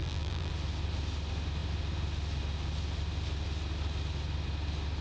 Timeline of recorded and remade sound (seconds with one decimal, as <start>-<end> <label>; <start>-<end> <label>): 0.0-0.5 remade; 0.5-5.0 recorded